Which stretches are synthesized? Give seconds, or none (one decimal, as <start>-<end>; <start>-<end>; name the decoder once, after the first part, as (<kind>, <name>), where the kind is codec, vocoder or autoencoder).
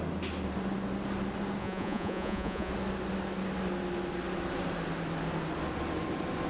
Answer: 1.6-2.7 (vocoder, Vocos)